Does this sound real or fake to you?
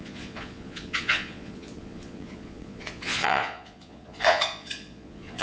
fake